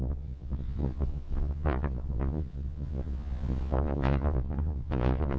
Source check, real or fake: fake